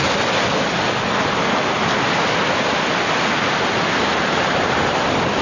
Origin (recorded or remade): recorded